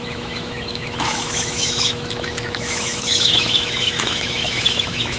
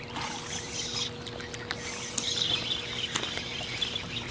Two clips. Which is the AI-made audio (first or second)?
first